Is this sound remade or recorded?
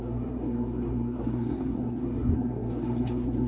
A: remade